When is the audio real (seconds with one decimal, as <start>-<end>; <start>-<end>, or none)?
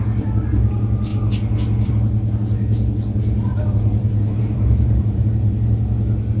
0.0-3.5; 5.5-6.4